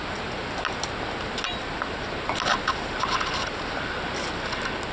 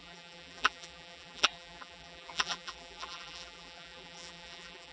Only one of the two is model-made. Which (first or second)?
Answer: second